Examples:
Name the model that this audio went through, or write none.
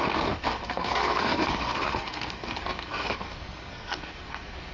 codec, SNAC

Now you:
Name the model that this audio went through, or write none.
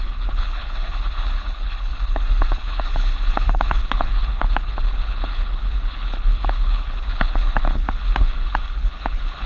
codec, HILCodec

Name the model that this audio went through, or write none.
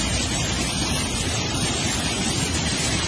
none